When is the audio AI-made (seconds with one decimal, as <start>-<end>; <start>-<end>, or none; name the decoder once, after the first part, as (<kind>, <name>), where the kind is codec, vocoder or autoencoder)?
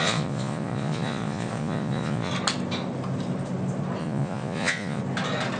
0.0-2.3 (vocoder, Vocos); 4.0-5.0